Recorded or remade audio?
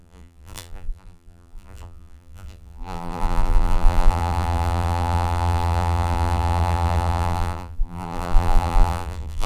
remade